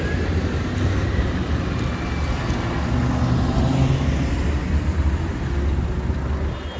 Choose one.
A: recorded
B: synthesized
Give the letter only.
A